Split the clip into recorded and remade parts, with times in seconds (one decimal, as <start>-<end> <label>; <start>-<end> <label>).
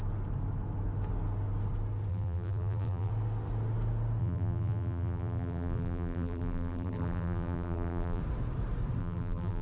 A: 0.0-2.1 recorded; 2.1-3.1 remade; 3.1-4.2 recorded; 4.2-8.2 remade; 8.2-9.0 recorded; 9.0-9.6 remade